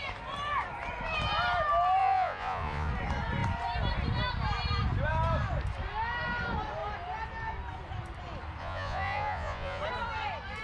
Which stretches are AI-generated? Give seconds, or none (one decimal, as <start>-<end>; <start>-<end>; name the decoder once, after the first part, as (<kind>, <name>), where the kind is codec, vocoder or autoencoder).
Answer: 2.0-2.9 (vocoder, Vocos); 8.6-9.8